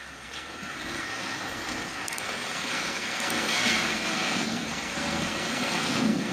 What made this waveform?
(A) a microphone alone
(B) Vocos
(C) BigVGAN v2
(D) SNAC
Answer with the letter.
D